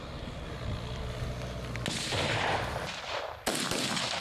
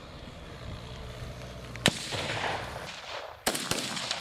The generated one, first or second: second